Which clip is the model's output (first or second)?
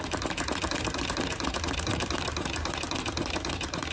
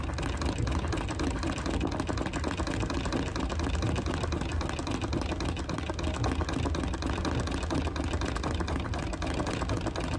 first